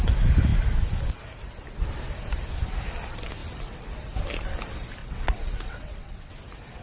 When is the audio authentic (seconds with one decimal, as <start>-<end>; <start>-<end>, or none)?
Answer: 0.0-5.0; 6.3-6.8